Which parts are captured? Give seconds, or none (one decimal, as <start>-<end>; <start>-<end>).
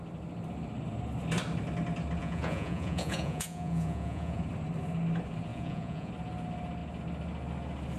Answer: 0.0-2.2; 4.4-5.5; 6.1-8.0